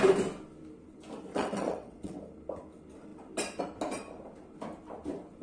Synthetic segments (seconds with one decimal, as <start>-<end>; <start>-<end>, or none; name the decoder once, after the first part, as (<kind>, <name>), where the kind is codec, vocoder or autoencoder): 1.3-2.2 (vocoder, WaveNeXt)